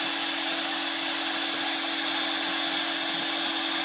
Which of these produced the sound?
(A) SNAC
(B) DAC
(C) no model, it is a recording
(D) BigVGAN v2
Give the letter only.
C